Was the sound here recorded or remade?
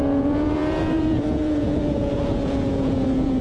remade